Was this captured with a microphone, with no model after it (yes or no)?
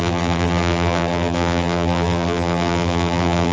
no